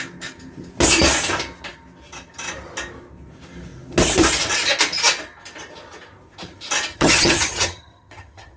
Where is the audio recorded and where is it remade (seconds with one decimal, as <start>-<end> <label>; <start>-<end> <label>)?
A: 0.0-6.9 recorded; 6.9-8.6 remade